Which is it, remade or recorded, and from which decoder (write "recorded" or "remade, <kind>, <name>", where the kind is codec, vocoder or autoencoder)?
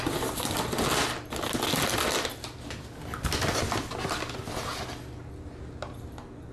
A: recorded